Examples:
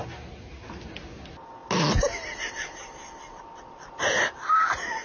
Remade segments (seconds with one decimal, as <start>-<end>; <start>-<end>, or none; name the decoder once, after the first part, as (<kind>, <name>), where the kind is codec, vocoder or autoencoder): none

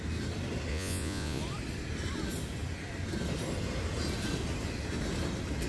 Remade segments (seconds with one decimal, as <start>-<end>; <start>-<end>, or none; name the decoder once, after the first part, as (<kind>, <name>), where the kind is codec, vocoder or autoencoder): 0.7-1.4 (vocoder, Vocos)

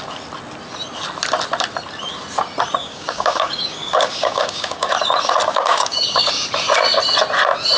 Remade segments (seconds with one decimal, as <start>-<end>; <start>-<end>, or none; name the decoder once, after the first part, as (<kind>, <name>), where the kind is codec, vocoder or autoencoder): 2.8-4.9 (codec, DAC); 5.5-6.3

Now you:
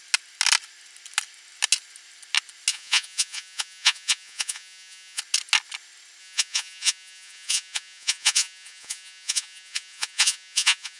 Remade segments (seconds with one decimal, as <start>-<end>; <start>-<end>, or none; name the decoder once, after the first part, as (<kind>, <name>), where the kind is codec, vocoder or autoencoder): 2.7-5.2 (vocoder, Vocos); 6.2-11.0

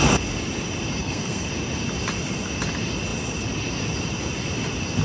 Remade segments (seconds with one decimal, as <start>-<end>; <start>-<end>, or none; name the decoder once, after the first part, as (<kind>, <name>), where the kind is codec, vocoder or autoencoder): 1.0-1.5 (codec, SNAC)